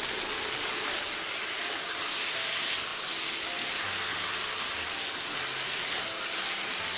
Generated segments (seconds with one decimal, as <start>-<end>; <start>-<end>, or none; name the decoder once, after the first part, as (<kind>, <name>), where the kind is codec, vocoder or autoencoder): none